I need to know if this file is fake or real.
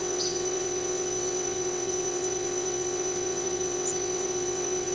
fake